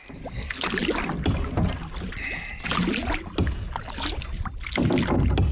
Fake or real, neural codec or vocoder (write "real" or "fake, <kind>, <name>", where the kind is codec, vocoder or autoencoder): real